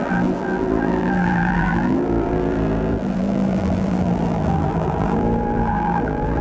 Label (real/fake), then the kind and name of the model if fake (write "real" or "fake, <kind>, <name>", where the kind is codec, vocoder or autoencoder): fake, vocoder, BigVGAN v2